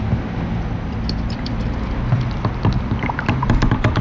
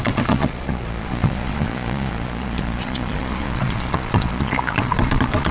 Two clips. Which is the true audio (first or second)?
first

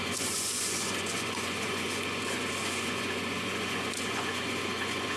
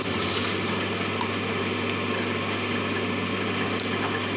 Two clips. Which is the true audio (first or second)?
second